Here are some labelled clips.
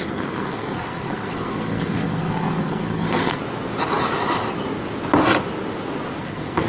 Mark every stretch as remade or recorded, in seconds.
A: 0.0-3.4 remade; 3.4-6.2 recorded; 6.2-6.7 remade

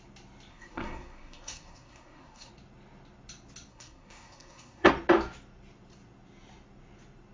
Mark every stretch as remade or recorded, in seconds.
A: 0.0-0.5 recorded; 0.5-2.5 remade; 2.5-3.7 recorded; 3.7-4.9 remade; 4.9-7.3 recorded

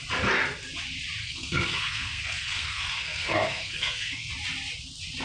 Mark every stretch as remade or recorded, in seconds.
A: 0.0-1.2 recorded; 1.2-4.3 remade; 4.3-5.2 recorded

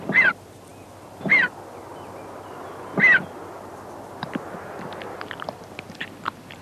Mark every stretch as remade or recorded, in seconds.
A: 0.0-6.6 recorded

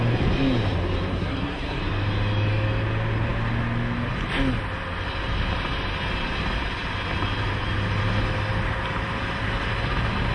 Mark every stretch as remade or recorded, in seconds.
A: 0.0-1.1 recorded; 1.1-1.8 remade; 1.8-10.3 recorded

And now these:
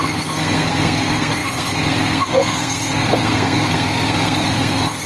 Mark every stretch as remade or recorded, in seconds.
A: 0.0-5.1 remade

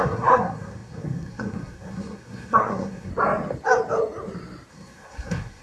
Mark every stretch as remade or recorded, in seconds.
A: 0.0-3.1 remade; 3.1-4.7 recorded; 4.7-5.6 remade